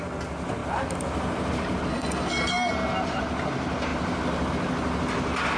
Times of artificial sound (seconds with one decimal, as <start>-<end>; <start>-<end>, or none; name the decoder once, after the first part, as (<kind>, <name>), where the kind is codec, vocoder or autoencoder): 1.9-2.7 (codec, SNAC)